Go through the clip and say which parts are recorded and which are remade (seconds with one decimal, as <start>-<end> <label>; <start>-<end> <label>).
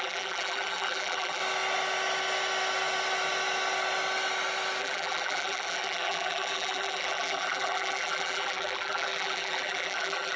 0.0-1.4 remade; 1.4-4.8 recorded; 4.8-10.4 remade